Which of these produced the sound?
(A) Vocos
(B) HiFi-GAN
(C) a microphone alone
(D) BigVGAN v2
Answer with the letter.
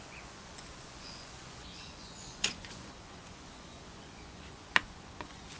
A